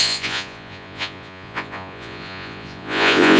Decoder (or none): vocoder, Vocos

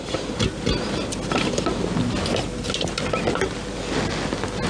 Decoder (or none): none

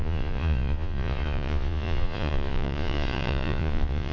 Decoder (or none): vocoder, Vocos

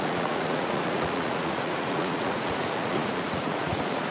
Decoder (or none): vocoder, Vocos